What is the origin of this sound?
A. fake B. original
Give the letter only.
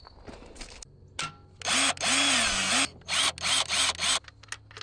B